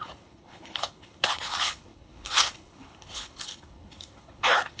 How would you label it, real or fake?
fake